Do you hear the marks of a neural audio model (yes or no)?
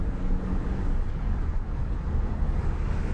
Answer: yes